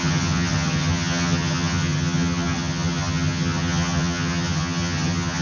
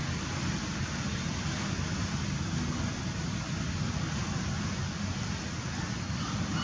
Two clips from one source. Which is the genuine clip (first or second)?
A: second